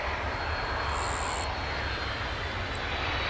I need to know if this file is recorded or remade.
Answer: recorded